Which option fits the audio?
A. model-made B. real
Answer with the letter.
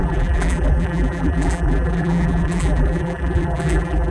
A